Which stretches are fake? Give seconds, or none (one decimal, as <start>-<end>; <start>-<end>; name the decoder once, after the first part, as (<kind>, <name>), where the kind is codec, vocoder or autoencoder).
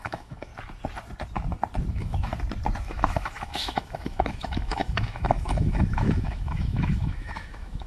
0.0-0.5 (autoencoder, DAC-VAE); 1.9-2.3; 2.8-7.9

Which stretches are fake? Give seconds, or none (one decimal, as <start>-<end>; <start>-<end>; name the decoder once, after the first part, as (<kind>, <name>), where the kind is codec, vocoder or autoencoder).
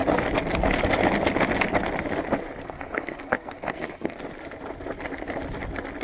2.6-4.2 (codec, SNAC)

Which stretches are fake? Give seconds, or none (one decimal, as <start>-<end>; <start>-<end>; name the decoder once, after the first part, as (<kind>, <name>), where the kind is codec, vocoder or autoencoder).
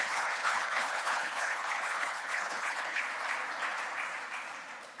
0.0-3.0 (codec, HILCodec)